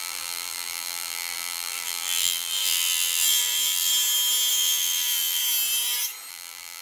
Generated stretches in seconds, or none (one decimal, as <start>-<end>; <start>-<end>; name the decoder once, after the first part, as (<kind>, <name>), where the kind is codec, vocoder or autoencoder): 0.0-3.9 (vocoder, BigVGAN v2); 4.5-5.4; 6.3-6.8